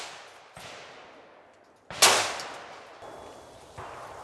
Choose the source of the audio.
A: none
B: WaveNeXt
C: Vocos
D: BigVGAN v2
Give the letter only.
A